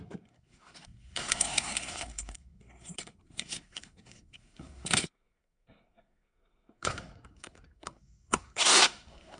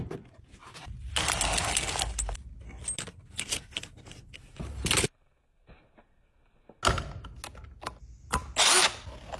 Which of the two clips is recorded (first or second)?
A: second